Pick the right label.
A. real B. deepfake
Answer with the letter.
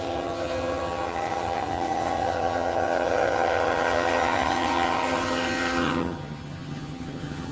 B